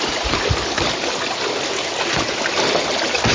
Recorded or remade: recorded